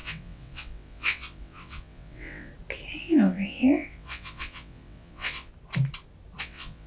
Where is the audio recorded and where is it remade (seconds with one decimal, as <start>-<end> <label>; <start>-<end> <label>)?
0.0-2.5 remade; 2.5-3.0 recorded; 3.0-5.5 remade; 5.5-6.4 recorded; 6.4-6.9 remade